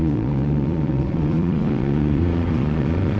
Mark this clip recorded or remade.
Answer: remade